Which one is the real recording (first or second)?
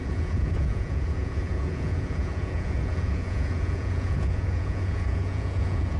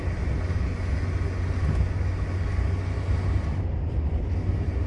second